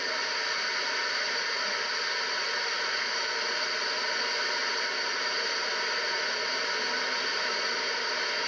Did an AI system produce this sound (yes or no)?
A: no